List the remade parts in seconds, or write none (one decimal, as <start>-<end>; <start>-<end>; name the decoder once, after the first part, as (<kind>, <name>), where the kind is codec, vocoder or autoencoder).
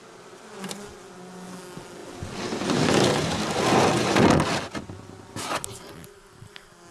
none